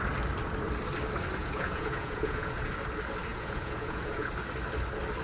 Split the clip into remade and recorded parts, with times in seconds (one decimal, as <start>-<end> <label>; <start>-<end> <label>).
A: 0.0-1.4 recorded; 1.4-2.7 remade; 2.7-3.3 recorded; 3.3-4.3 remade; 4.3-5.2 recorded